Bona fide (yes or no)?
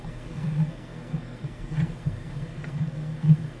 no